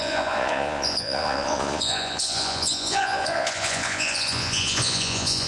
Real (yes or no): no